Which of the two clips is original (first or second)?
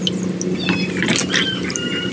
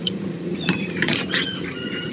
first